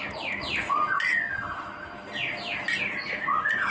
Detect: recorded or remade recorded